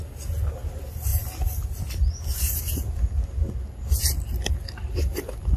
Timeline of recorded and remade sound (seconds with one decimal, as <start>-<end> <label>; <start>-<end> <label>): 0.0-5.6 recorded